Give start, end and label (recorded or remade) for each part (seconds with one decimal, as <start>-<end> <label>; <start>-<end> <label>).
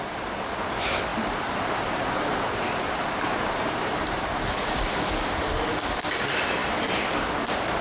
0.0-1.1 recorded; 1.1-5.3 remade; 5.3-7.8 recorded